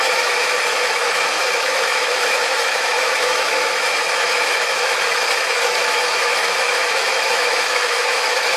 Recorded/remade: remade